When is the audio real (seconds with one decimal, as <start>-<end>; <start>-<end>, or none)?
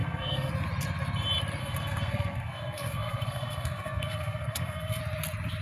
0.5-1.6; 5.0-5.6